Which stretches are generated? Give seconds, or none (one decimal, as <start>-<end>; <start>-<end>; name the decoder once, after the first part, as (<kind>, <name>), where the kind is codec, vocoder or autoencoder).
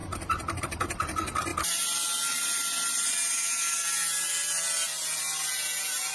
0.0-0.6 (vocoder, BigVGAN v2)